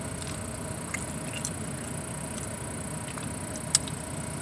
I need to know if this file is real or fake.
real